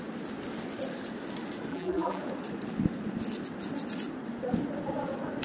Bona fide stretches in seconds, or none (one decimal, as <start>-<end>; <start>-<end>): 0.0-1.7; 2.2-5.4